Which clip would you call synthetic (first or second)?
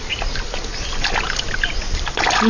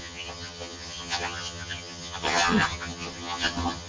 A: second